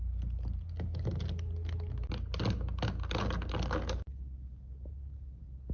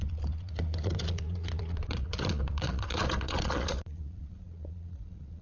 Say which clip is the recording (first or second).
first